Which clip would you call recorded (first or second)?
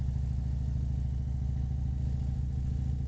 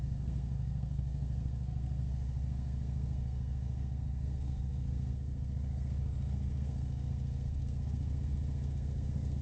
first